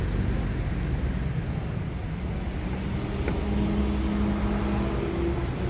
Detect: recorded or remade recorded